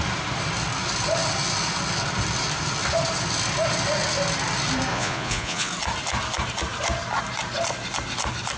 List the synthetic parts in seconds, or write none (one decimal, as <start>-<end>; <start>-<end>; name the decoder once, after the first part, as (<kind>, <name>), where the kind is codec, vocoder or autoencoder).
4.9-5.7 (vocoder, Vocos)